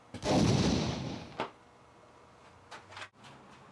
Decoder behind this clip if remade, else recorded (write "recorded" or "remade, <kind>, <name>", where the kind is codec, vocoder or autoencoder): recorded